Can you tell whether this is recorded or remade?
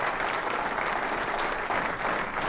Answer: recorded